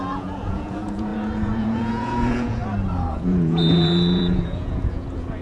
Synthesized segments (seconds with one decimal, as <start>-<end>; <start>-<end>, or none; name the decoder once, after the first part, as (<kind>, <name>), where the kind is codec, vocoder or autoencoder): 0.0-2.6 (vocoder, Vocos); 3.1-5.4